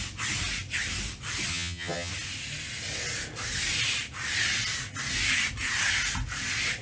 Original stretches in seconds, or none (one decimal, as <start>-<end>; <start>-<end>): 0.0-1.5; 2.1-6.8